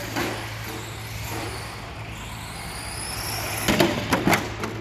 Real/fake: real